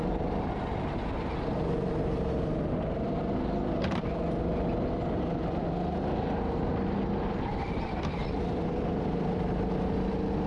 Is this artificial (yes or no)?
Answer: no